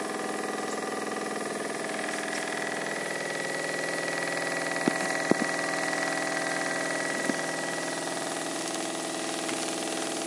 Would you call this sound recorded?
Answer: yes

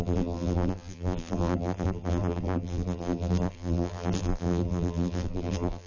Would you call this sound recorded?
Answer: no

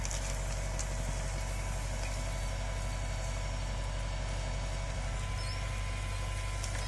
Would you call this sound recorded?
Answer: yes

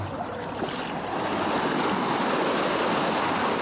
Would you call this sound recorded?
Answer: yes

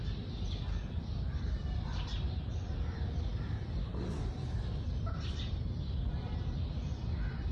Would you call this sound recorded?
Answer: no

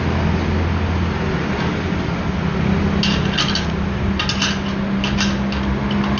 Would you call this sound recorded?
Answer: yes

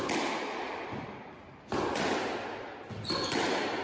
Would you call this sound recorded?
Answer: yes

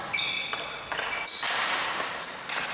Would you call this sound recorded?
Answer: yes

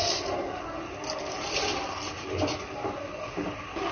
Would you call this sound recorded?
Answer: yes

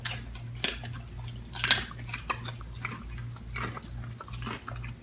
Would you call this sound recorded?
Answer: yes